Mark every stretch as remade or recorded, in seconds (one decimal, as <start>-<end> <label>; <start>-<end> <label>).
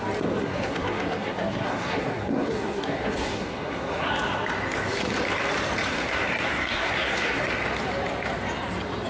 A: 0.0-0.4 recorded; 0.4-4.1 remade; 4.1-5.9 recorded; 5.9-7.4 remade; 7.4-9.1 recorded